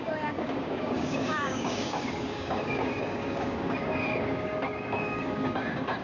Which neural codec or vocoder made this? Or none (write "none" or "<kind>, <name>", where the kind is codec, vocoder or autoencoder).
codec, DAC